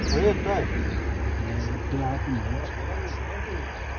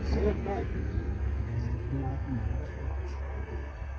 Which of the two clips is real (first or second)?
first